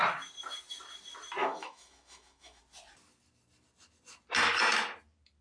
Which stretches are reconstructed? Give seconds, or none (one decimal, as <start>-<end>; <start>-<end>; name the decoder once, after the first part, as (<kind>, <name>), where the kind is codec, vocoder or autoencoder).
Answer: 1.4-2.6 (autoencoder, DAC-VAE)